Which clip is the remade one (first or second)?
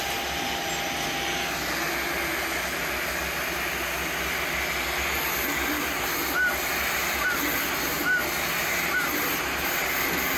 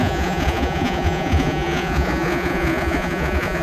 second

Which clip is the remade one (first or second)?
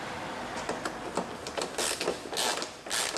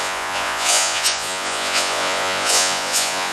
second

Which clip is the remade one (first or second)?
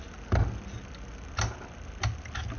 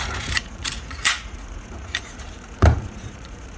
second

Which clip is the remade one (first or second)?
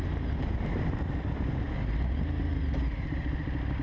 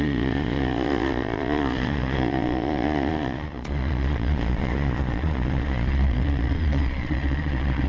second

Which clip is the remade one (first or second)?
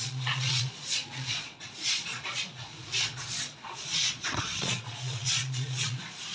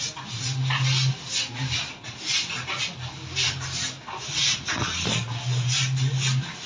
first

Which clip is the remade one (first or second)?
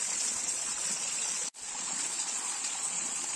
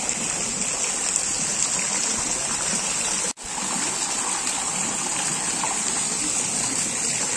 first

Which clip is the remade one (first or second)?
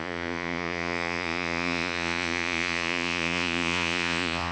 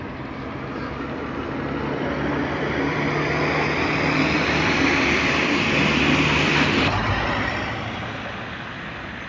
first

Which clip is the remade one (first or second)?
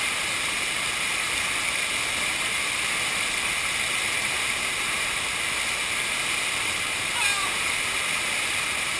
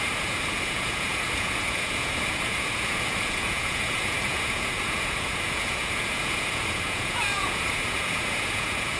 second